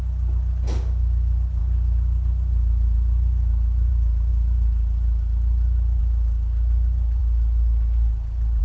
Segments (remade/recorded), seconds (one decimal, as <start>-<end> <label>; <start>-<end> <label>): 0.0-1.6 recorded; 1.6-3.9 remade; 3.9-4.3 recorded; 4.3-6.0 remade; 6.0-8.6 recorded